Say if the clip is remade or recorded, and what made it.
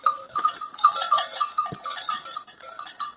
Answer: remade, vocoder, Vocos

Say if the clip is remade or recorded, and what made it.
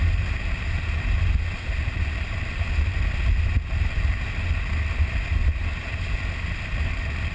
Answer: recorded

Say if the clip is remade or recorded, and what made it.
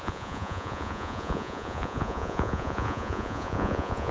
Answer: remade, vocoder, Vocos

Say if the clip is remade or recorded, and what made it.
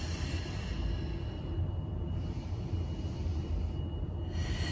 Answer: recorded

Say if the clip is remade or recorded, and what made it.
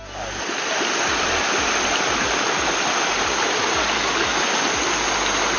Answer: recorded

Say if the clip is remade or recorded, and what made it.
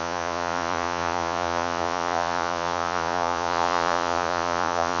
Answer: remade, vocoder, Vocos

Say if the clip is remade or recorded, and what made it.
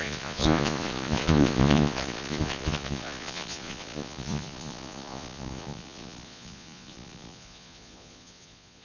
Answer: remade, vocoder, Vocos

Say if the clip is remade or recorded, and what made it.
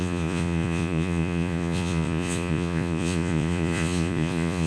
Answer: remade, vocoder, Vocos